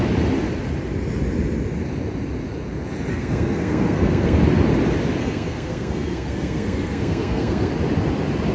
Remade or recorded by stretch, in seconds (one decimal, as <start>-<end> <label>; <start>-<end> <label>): 0.0-3.1 recorded; 3.1-4.4 remade; 4.4-5.2 recorded; 5.2-7.7 remade; 7.7-8.5 recorded